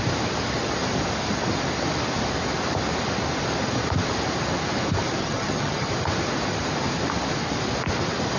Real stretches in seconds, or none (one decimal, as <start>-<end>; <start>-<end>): 0.0-5.2; 5.9-8.4